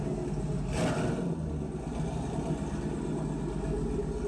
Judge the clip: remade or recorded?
recorded